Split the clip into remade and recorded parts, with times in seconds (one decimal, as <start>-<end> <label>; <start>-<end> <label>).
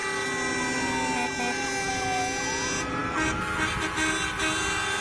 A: 0.0-5.0 recorded